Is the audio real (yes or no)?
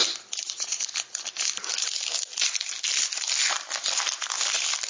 yes